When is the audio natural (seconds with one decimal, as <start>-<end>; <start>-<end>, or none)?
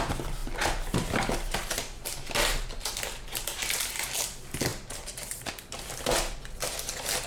0.0-7.3